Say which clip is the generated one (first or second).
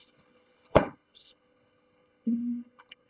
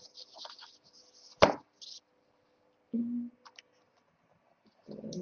first